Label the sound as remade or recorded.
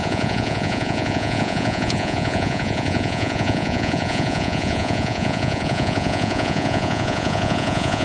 remade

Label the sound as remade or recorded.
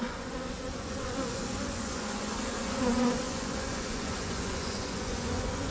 remade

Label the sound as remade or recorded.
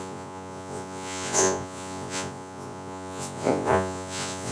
remade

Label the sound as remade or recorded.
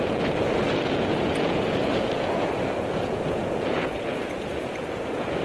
remade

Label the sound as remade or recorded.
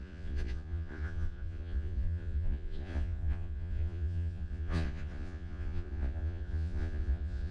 remade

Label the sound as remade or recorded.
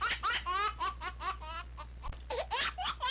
recorded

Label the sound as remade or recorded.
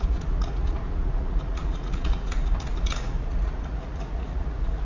remade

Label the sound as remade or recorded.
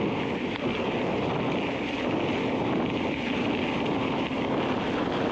recorded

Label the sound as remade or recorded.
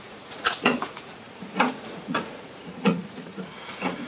remade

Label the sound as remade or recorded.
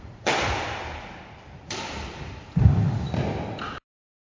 recorded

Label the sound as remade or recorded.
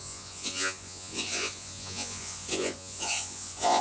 remade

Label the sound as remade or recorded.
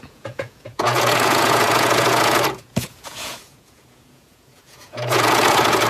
remade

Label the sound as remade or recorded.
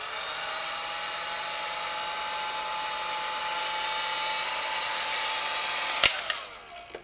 recorded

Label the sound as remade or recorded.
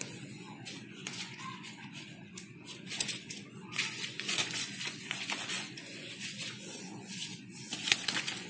remade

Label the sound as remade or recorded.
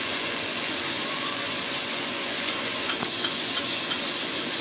remade